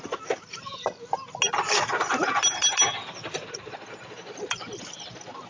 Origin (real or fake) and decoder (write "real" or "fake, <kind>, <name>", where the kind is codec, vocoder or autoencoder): real